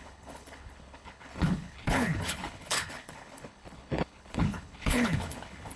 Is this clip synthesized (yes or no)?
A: yes